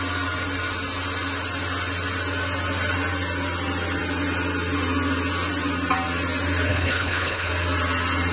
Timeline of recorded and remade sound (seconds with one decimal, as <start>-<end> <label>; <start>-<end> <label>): 0.0-6.7 recorded; 6.7-7.5 remade; 7.5-8.3 recorded